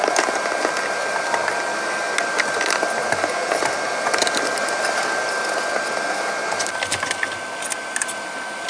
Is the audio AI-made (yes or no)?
no